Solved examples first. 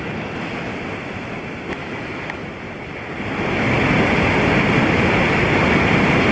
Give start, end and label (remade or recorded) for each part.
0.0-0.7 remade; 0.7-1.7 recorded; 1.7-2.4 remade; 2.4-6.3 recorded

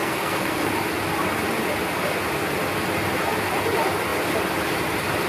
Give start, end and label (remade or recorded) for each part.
0.0-0.7 remade; 0.7-5.3 recorded

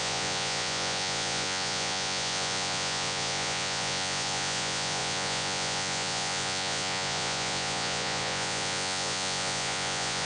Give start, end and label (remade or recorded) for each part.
0.0-10.3 remade

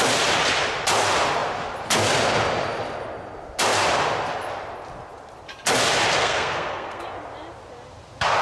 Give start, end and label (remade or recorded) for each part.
0.0-6.2 recorded; 6.2-7.0 remade; 7.0-8.4 recorded

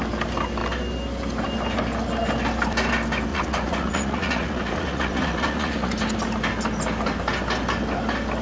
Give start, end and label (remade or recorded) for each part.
0.0-3.3 recorded; 3.3-5.9 remade; 5.9-8.4 recorded

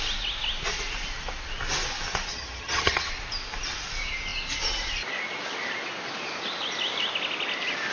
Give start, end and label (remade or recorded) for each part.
0.0-2.3 recorded; 2.3-3.1 remade; 3.1-7.9 recorded

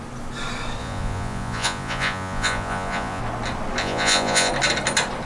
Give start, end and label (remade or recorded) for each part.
0.0-0.8 recorded; 0.8-3.2 remade; 3.2-3.8 recorded; 3.8-4.5 remade; 4.5-5.3 recorded